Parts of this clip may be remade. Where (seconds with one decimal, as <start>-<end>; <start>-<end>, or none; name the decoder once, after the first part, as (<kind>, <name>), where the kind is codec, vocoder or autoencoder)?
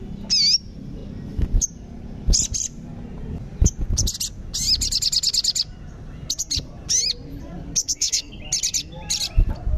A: 7.8-8.4 (codec, SNAC)